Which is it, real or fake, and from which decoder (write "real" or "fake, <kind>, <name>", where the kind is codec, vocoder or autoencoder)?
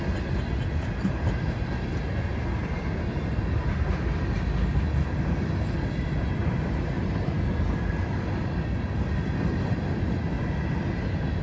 real